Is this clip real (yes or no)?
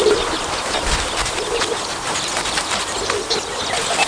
yes